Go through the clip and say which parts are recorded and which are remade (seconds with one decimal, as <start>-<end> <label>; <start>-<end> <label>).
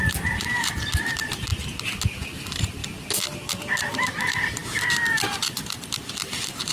0.0-1.5 remade; 1.5-2.3 recorded; 2.3-2.8 remade; 2.8-3.5 recorded; 3.5-6.7 remade